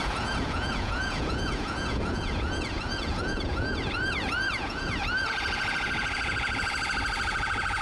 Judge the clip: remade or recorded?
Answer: remade